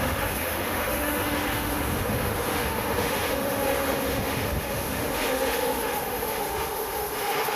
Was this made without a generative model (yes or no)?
no